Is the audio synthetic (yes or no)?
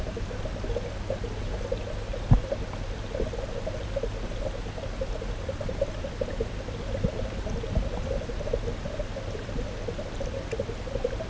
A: no